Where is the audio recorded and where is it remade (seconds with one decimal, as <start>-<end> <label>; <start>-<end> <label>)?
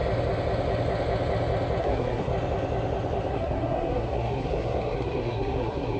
0.0-1.8 recorded; 1.8-2.3 remade; 2.3-3.3 recorded; 3.3-6.0 remade